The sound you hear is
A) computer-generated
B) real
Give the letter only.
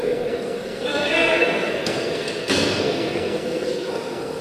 A